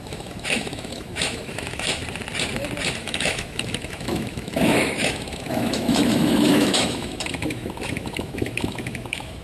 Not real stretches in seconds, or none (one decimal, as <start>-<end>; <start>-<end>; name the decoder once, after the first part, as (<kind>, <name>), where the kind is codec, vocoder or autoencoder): 0.0-2.0 (autoencoder, DAC-VAE); 3.0-9.4